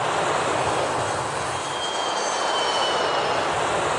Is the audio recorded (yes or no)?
yes